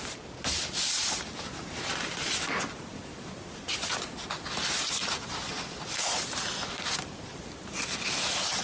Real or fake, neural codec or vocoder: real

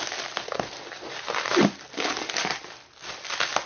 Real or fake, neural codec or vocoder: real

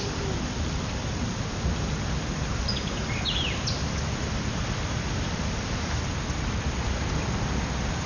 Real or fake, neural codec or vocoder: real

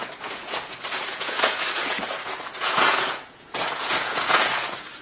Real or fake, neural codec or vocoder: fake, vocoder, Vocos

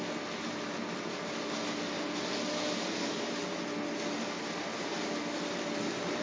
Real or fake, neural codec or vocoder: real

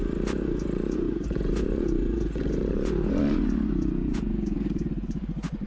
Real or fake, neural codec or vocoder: fake, vocoder, Vocos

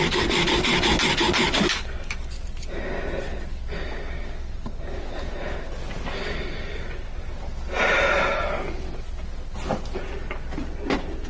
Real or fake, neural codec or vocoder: real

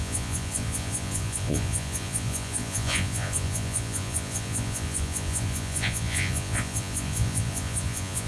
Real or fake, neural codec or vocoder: fake, vocoder, Vocos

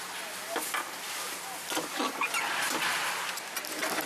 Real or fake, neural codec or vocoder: real